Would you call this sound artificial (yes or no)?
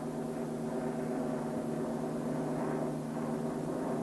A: no